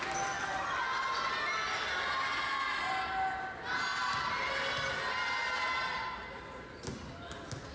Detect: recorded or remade recorded